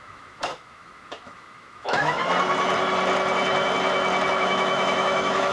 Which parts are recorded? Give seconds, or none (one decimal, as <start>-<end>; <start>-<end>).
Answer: 2.2-4.3